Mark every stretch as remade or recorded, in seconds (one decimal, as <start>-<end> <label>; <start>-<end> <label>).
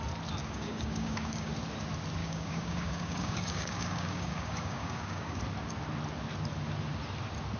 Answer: 0.0-0.4 recorded; 0.4-1.5 remade; 1.5-2.2 recorded; 2.2-5.4 remade; 5.4-7.6 recorded